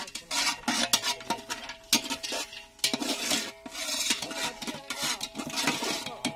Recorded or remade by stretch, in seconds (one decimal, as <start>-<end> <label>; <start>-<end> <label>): 0.0-6.4 recorded